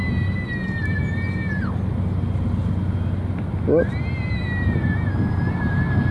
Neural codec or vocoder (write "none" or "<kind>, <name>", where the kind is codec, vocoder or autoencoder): none